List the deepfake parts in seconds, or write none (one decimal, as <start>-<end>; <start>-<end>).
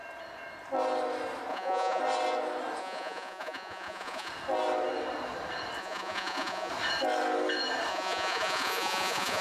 1.5-2.0; 2.8-4.3; 5.8-6.7; 7.9-9.4